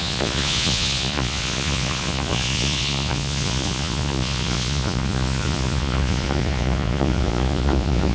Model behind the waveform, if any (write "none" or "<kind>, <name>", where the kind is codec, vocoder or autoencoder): vocoder, Vocos